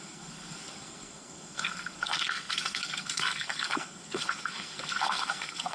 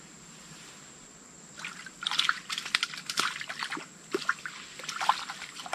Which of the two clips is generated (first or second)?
first